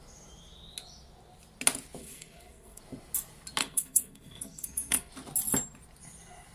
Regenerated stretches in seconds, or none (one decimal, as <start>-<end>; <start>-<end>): 2.0-2.8; 3.6-5.1